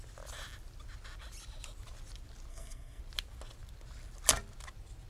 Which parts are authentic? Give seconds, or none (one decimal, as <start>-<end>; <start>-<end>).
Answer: 0.0-2.5; 3.0-5.1

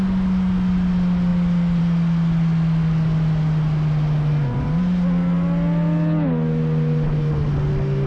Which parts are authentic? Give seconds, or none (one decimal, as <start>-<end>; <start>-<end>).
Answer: 0.0-8.1

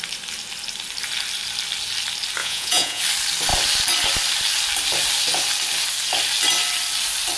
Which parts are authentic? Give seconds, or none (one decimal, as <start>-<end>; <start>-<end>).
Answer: 0.0-2.4; 3.0-7.4

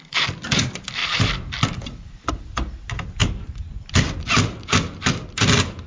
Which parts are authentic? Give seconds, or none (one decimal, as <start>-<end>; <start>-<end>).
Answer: 0.0-1.0; 2.3-3.2; 5.1-5.9

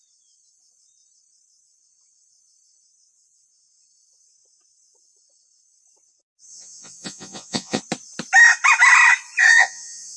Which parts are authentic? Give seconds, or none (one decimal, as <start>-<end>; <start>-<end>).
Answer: 0.0-6.5; 7.8-9.5

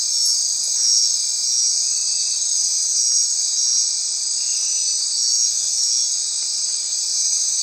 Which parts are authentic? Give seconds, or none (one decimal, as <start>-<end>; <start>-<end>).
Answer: 0.0-5.3; 5.9-7.6

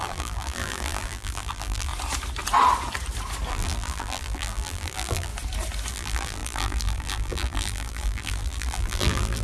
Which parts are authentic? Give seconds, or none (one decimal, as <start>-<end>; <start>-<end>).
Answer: 1.9-3.5; 5.3-5.9